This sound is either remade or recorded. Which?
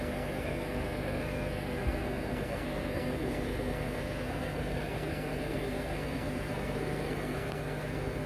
remade